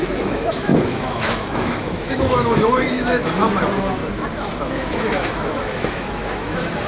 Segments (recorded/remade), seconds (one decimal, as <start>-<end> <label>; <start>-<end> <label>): 0.0-4.0 remade; 4.0-4.6 recorded; 4.6-6.9 remade

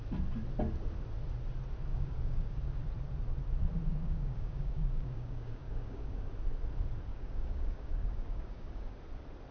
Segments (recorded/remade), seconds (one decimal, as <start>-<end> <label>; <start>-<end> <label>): 0.0-1.9 recorded; 1.9-2.8 remade; 2.8-4.0 recorded; 4.0-6.3 remade; 6.3-7.1 recorded; 7.1-8.9 remade; 8.9-9.5 recorded

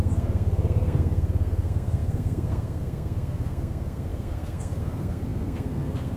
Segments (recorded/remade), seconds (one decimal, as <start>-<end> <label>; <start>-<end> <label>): 0.0-6.2 remade

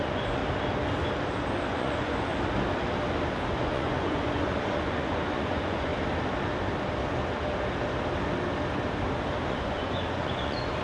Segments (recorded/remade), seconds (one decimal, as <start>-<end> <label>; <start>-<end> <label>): 0.0-0.4 remade; 0.4-1.7 recorded; 1.7-2.3 remade; 2.3-3.6 recorded; 3.6-5.9 remade; 5.9-9.5 recorded; 9.5-10.8 remade

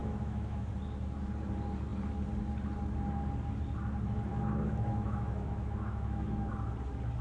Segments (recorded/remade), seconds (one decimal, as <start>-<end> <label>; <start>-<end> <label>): 0.0-0.7 remade; 0.7-4.3 recorded; 4.3-6.5 remade; 6.5-7.2 recorded

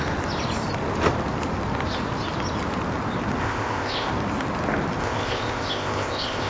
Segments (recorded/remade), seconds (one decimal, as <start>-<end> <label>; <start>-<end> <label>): 0.0-3.4 recorded; 3.4-4.1 remade; 4.1-5.0 recorded; 5.0-6.5 remade

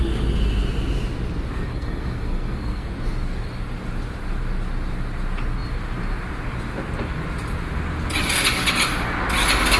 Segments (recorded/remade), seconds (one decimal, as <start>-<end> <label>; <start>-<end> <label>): 0.0-1.7 recorded; 1.7-2.9 remade; 2.9-9.8 recorded